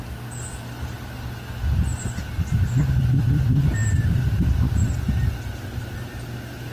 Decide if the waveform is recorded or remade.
recorded